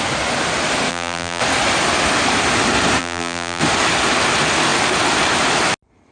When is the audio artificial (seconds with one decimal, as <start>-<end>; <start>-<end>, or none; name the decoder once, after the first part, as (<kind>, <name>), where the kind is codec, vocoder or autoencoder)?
0.9-1.4 (vocoder, BigVGAN v2); 3.0-3.6

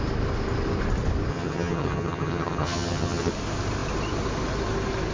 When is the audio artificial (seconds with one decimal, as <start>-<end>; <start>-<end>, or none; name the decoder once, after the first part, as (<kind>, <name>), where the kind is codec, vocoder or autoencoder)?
1.3-3.3 (vocoder, HiFi-GAN)

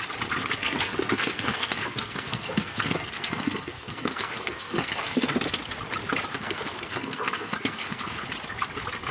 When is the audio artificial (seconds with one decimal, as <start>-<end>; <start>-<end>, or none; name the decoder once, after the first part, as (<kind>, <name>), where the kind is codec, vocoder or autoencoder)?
0.6-5.3 (codec, SNAC); 6.3-8.2

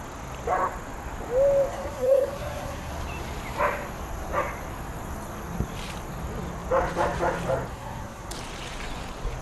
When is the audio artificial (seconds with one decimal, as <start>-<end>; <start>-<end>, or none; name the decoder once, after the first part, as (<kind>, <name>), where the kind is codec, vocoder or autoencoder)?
1.7-2.9 (codec, SNAC); 7.7-8.3